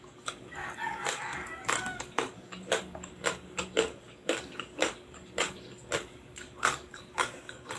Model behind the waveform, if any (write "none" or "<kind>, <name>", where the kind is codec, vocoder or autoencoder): codec, DAC